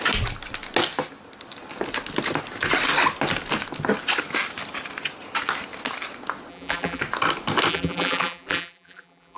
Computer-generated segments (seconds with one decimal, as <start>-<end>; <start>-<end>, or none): 6.5-7.0; 7.7-9.4